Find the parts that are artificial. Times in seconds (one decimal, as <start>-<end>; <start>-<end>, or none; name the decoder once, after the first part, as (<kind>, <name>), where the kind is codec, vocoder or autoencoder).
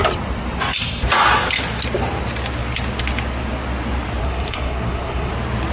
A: 4.2-5.3 (codec, SNAC)